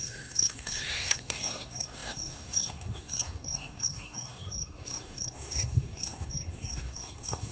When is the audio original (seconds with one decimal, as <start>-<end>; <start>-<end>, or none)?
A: none